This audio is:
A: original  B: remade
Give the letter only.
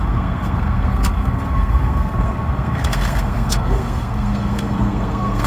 B